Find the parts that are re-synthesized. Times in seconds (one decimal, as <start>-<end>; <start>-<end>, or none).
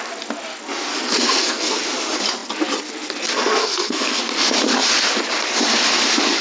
0.9-1.8; 3.3-4.2